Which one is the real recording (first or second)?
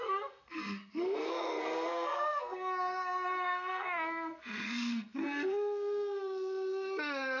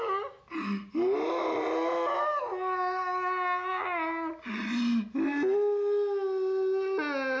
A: second